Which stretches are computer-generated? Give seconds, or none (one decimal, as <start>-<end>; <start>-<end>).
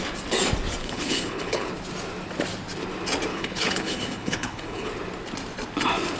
0.8-1.7; 3.3-4.9